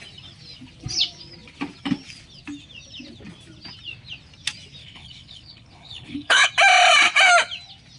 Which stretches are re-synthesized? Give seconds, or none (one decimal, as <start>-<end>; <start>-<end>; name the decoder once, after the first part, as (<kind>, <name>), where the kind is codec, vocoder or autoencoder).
4.8-6.5 (codec, HILCodec)